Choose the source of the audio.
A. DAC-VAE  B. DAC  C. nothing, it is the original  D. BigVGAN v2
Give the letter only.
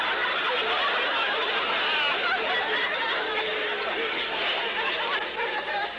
C